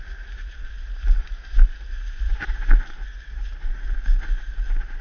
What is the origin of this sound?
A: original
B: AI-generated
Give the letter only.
A